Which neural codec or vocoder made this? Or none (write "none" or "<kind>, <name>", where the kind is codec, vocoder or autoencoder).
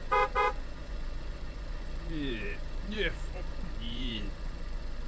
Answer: vocoder, Vocos